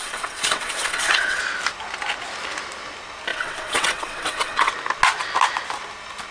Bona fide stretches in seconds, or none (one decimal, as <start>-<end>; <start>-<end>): 1.4-3.3; 4.7-6.3